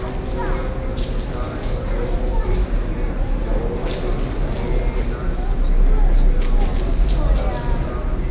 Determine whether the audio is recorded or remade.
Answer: recorded